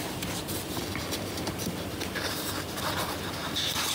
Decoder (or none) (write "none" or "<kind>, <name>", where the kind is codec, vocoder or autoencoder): none